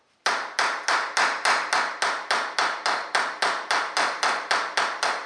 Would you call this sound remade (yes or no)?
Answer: no